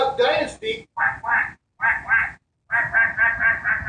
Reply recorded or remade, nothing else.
recorded